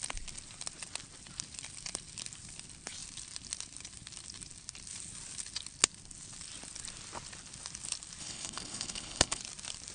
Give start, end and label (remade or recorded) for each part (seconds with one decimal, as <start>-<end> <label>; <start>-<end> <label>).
0.0-8.2 recorded; 8.2-9.4 remade; 9.4-9.9 recorded